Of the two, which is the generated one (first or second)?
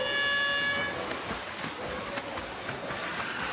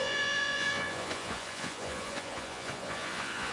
second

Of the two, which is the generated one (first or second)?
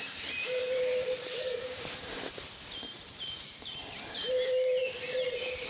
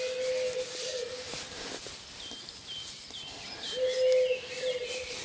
first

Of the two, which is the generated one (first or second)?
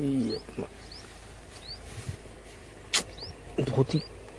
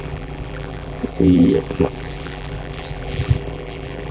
second